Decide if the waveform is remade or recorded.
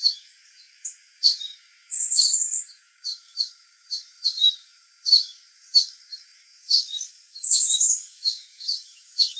remade